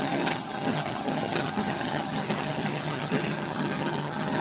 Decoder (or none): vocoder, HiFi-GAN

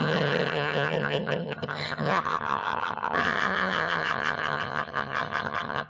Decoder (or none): vocoder, HiFi-GAN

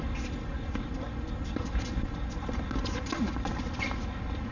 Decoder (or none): none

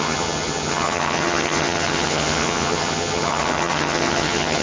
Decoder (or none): vocoder, HiFi-GAN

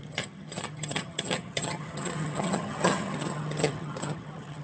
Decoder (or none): vocoder, HiFi-GAN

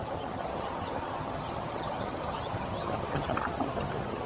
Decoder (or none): vocoder, HiFi-GAN